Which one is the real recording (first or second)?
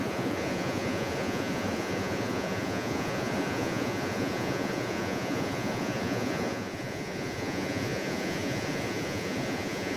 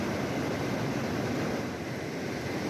second